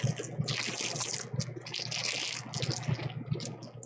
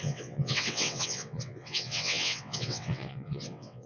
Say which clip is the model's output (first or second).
second